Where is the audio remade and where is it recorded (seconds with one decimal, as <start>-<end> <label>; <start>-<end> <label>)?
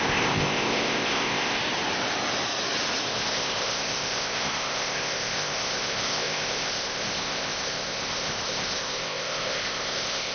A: 0.0-1.6 remade; 1.6-3.1 recorded; 3.1-10.3 remade